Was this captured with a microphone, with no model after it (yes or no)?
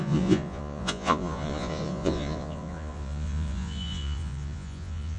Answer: no